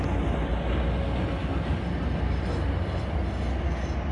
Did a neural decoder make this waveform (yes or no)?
no